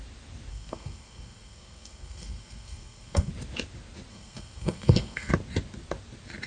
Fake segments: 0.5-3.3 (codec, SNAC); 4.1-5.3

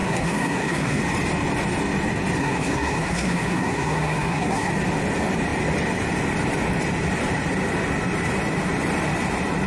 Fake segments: 0.0-1.0 (codec, SNAC); 2.4-4.7

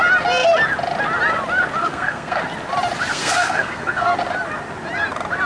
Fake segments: 1.8-2.4 (codec, SNAC); 3.1-4.1

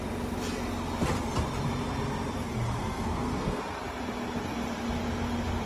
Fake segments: 2.8-3.6 (codec, SNAC)